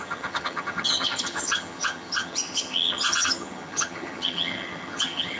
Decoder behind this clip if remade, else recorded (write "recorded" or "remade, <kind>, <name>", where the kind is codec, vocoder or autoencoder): remade, vocoder, HiFi-GAN